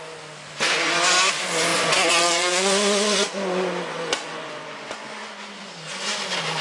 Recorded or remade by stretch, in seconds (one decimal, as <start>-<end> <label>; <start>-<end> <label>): 0.0-1.7 recorded; 1.7-5.7 remade; 5.7-6.6 recorded